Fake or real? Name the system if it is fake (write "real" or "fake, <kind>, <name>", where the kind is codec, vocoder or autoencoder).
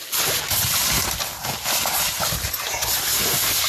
real